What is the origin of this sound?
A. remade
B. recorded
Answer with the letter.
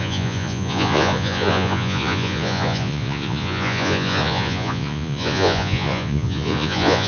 A